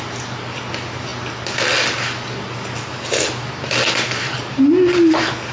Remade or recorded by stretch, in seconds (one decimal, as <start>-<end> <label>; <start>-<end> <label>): 0.0-5.5 recorded